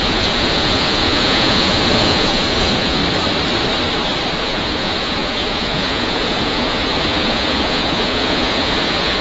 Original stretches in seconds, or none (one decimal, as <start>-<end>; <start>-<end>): 3.0-4.4

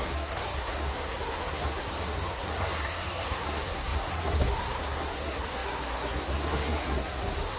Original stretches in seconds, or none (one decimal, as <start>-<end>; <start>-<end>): none